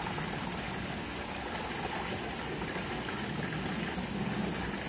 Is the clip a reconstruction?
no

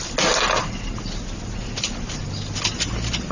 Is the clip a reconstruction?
no